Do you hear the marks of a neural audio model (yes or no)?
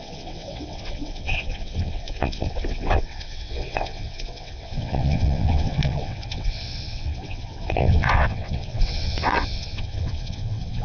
yes